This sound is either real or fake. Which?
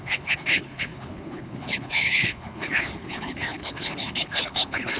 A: fake